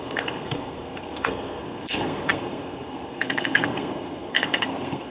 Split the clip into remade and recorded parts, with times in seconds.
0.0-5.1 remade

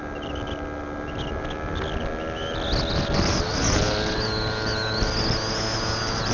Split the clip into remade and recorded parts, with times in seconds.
0.0-6.3 recorded

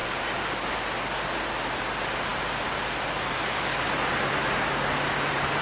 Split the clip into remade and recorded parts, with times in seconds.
0.0-5.6 recorded

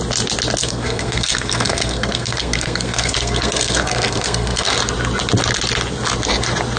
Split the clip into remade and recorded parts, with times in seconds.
0.0-0.6 recorded; 0.6-4.7 remade; 4.7-6.8 recorded

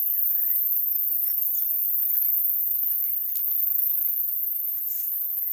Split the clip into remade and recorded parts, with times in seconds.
0.0-5.5 recorded